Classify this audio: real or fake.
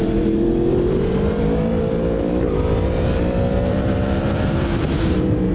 fake